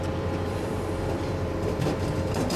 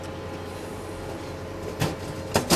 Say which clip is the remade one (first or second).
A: first